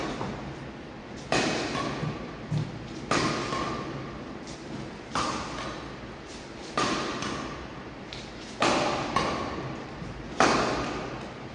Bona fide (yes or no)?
yes